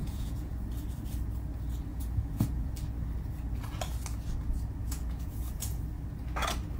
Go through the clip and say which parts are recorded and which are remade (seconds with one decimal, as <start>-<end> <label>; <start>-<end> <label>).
0.0-0.5 remade; 0.5-1.9 recorded; 1.9-2.7 remade; 2.7-4.8 recorded; 4.8-5.8 remade; 5.8-6.8 recorded